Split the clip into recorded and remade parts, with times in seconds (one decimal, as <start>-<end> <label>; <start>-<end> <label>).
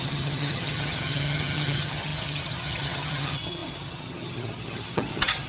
0.0-5.5 remade